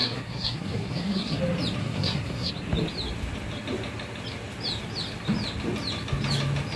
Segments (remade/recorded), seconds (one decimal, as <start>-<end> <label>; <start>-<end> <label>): 0.0-1.4 remade; 1.4-1.8 recorded; 1.8-2.5 remade; 2.5-6.8 recorded